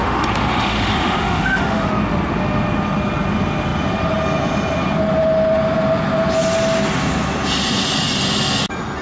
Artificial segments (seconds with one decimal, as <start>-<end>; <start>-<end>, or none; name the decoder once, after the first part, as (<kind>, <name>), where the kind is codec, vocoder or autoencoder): 0.0-1.9 (autoencoder, DAC-VAE)